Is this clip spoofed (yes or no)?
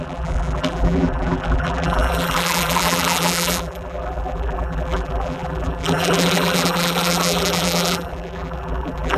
yes